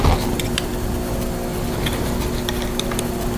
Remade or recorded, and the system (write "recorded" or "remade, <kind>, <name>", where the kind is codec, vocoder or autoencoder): recorded